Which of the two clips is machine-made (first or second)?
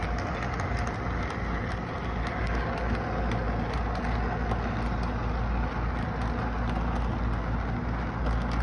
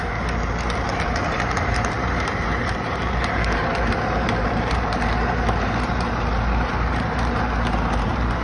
second